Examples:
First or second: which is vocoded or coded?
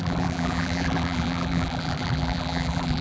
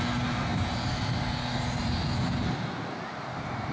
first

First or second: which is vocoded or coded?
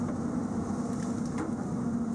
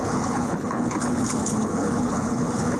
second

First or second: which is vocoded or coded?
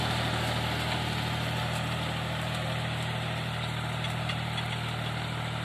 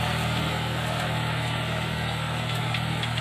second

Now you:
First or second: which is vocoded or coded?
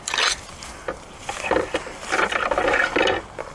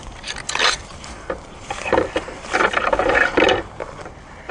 second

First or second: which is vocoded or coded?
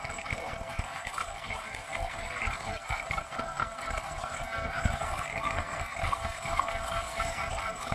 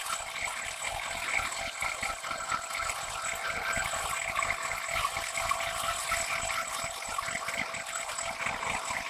first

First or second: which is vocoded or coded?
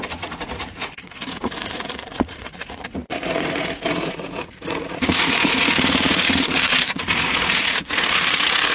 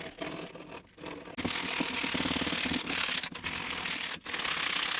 first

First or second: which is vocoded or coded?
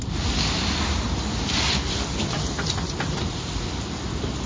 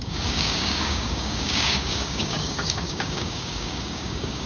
second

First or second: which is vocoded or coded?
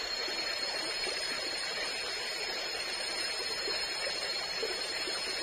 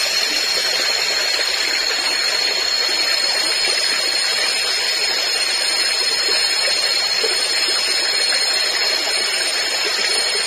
first